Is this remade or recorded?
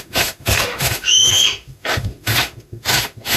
remade